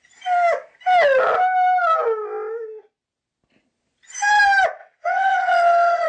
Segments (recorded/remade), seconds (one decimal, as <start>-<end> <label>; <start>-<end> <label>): 0.0-4.8 recorded; 4.8-6.1 remade

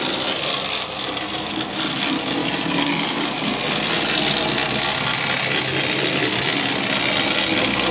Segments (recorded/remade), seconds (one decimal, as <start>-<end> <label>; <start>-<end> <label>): 0.0-7.9 recorded

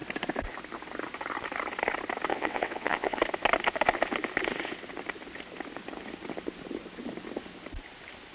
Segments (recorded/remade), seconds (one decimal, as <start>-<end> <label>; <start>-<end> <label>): 0.0-2.3 recorded; 2.3-3.2 remade; 3.2-8.3 recorded

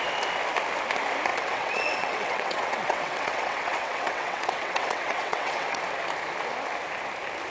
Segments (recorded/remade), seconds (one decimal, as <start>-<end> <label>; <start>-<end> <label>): 0.0-1.3 recorded; 1.3-5.8 remade; 5.8-7.5 recorded

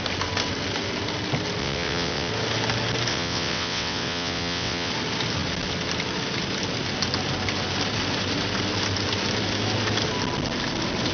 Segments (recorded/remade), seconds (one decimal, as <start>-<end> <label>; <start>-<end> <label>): 0.0-1.6 recorded; 1.6-2.3 remade; 2.3-3.1 recorded; 3.1-4.9 remade; 4.9-11.1 recorded

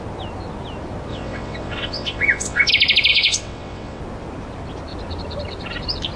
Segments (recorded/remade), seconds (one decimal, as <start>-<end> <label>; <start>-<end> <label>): 0.0-1.1 recorded; 1.1-2.7 remade; 2.7-3.1 recorded; 3.1-4.0 remade; 4.0-6.2 recorded

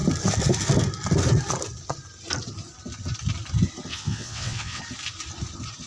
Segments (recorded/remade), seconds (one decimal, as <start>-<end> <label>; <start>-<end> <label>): 0.0-3.9 recorded; 3.9-4.8 remade; 4.8-5.9 recorded